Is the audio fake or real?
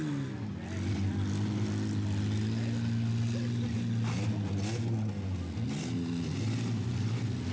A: real